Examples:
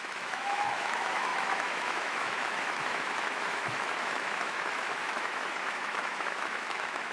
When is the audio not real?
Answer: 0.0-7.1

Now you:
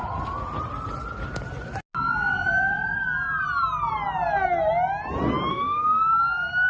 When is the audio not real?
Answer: 5.5-6.0

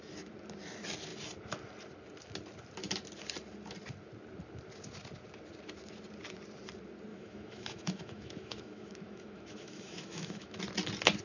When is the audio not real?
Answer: 7.1-10.6

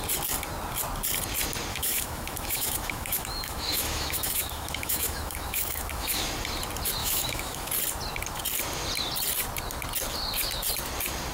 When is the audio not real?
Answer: 1.7-6.2; 7.0-7.7

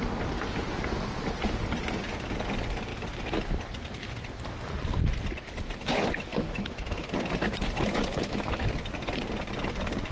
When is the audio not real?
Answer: 6.3-7.1; 8.1-8.7

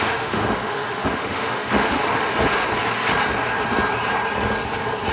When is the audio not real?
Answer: 0.0-2.3

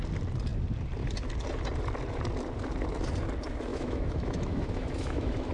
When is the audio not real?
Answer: 3.7-5.5

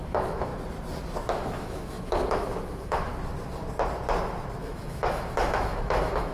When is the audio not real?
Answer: 0.0-0.5; 1.3-3.1; 4.6-6.3